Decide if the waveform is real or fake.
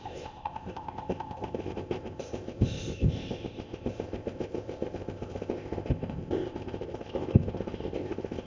fake